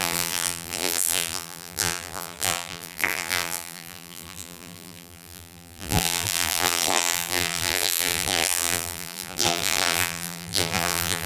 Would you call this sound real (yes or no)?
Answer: no